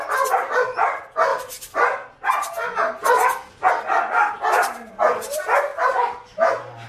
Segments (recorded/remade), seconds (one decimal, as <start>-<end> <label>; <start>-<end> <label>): 0.0-5.7 recorded; 5.7-6.9 remade

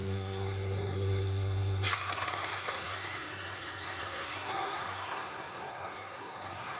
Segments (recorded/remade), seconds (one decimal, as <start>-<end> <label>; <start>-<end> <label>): 0.0-6.8 remade

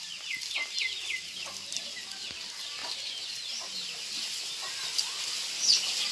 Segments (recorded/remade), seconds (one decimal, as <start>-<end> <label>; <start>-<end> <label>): 0.0-6.1 recorded

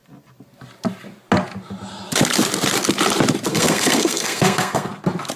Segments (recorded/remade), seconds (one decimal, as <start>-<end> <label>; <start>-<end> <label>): 0.0-3.5 recorded; 3.5-4.9 remade; 4.9-5.4 recorded